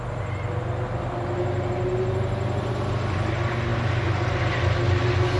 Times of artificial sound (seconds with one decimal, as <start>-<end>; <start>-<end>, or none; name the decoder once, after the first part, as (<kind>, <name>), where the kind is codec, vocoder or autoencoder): none